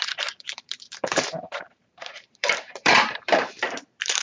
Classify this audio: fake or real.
fake